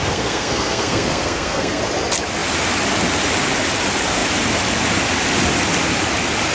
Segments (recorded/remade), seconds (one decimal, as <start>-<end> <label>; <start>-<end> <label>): 0.0-1.8 remade; 1.8-6.5 recorded